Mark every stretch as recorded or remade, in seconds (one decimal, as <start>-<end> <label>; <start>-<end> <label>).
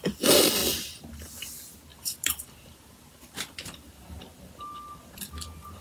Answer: 0.0-1.9 recorded; 1.9-4.2 remade; 4.2-5.8 recorded